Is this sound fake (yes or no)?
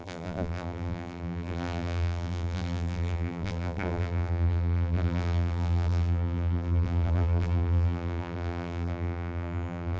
yes